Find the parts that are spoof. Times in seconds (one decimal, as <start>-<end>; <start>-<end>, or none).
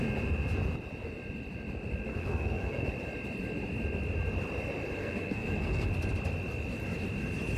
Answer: 2.1-2.9; 5.0-5.9